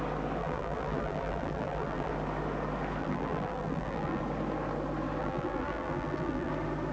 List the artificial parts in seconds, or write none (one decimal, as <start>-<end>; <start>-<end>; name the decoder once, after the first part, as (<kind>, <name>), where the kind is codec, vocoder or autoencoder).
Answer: 0.4-2.1 (vocoder, BigVGAN v2); 3.0-4.2; 5.2-6.5